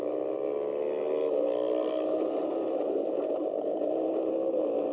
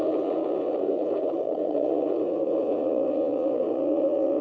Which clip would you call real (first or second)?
first